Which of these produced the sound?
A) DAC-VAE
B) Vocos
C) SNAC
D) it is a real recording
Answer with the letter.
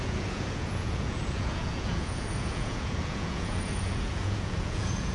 B